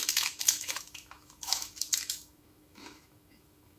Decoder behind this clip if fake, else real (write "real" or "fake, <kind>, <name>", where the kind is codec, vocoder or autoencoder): fake, autoencoder, DAC-VAE